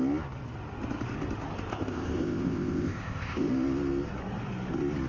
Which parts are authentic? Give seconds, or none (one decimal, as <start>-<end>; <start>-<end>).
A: 0.0-1.7; 3.5-5.1